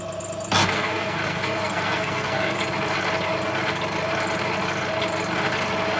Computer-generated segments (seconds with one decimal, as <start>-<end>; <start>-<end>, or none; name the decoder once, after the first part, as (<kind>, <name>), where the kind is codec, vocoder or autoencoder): 0.6-2.6 (codec, SNAC)